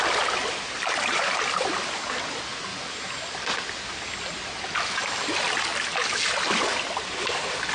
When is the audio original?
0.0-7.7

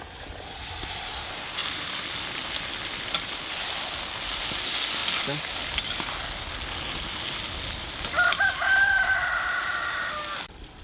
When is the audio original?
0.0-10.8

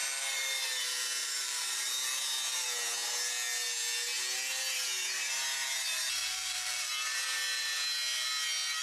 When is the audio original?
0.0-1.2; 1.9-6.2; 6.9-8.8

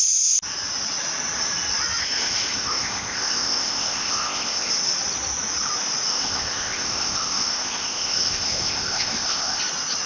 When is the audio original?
0.0-2.0; 4.7-6.1; 9.6-10.1

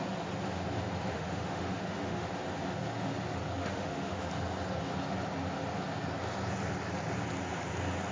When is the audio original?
0.0-1.1; 2.3-3.6; 4.2-8.1

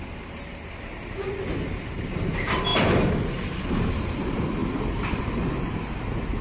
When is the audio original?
0.0-6.4

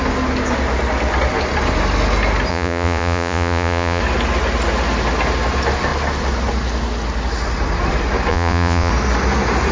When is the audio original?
0.0-2.5; 4.0-8.3; 8.9-9.7